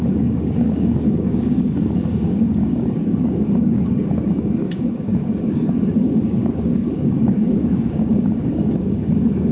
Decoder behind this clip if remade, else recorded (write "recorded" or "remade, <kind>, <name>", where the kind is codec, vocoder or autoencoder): remade, codec, DAC